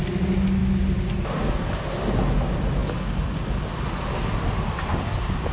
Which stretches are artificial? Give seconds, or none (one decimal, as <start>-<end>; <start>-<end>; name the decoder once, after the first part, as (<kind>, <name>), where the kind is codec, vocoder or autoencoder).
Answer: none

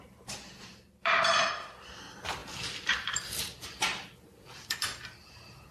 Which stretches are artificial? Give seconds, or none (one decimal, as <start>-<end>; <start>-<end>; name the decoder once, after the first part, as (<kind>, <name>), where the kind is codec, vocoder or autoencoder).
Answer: 0.7-5.7 (vocoder, BigVGAN v2)

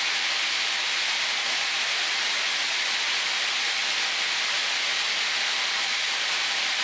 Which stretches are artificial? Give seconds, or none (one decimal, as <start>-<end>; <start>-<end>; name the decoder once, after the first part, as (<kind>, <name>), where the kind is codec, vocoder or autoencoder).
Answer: 2.6-3.2 (vocoder, BigVGAN v2)